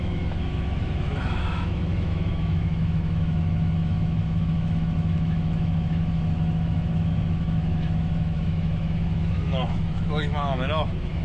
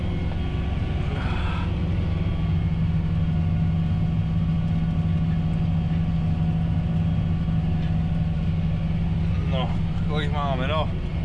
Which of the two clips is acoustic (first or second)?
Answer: second